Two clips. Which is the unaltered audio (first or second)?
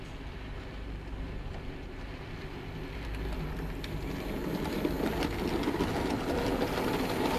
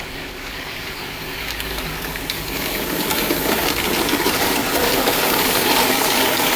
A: first